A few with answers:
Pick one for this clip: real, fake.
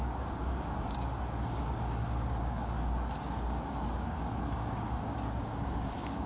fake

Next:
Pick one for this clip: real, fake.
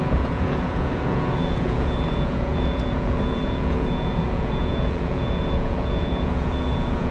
fake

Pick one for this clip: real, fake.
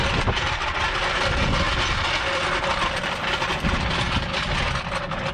real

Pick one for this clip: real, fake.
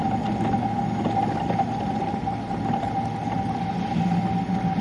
real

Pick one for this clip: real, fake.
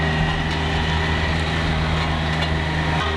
real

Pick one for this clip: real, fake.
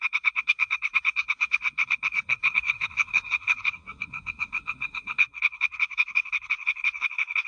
fake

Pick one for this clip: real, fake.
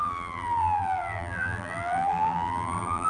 fake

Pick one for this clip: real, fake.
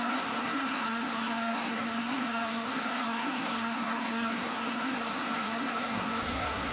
fake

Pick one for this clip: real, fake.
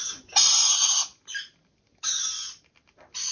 real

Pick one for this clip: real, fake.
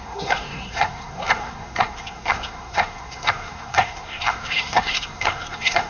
fake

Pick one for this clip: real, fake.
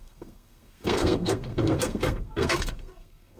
fake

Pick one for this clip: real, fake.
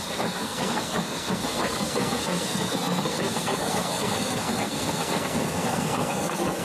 fake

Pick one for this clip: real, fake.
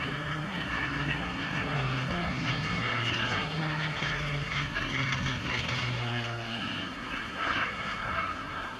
fake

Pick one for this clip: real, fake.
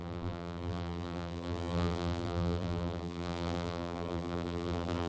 fake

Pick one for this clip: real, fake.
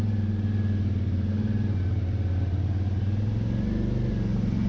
real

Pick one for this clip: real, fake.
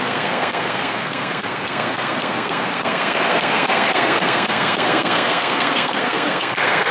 fake